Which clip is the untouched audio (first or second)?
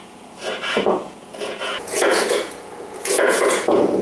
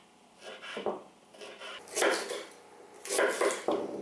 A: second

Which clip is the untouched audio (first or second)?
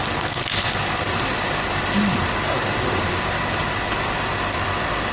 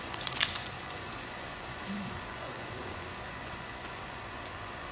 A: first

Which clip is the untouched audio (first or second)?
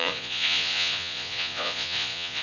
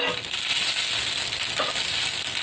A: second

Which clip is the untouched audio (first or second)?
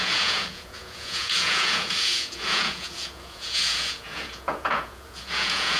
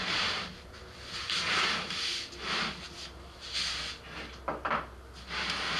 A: second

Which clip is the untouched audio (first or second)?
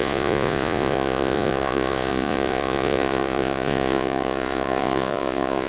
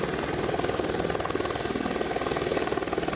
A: second